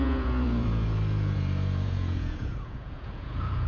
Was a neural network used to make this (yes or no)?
yes